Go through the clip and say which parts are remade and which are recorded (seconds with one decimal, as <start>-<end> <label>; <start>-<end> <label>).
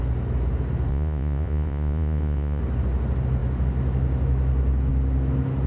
0.0-0.9 recorded; 0.9-2.6 remade; 2.6-5.7 recorded